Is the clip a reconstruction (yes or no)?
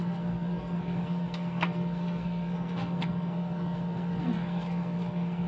yes